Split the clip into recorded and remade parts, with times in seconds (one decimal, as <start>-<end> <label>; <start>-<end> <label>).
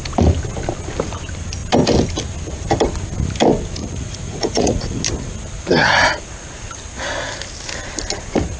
0.0-3.8 recorded; 3.8-5.0 remade; 5.0-8.6 recorded